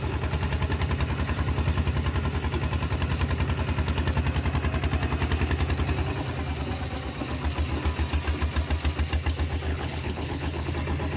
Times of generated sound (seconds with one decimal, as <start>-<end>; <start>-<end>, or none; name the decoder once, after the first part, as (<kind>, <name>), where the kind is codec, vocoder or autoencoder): 9.7-10.7 (codec, HILCodec)